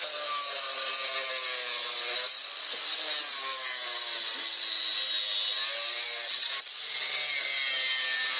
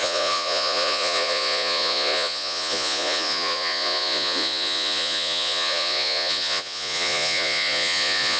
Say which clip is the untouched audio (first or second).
first